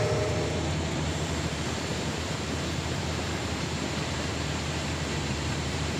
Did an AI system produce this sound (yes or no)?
yes